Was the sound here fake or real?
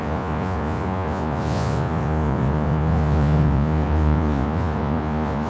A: fake